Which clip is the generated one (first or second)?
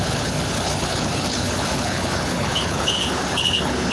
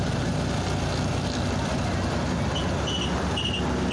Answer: first